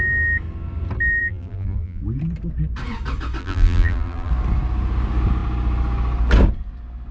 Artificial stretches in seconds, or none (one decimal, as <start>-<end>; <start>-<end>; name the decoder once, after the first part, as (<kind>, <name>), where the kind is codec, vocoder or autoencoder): 1.2-2.0 (vocoder, BigVGAN v2); 3.4-4.3